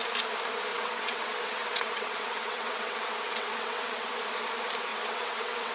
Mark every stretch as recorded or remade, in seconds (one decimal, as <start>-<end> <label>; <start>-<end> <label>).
0.0-0.7 recorded; 0.7-4.1 remade; 4.1-4.9 recorded; 4.9-5.7 remade